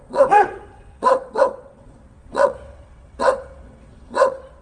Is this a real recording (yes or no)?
no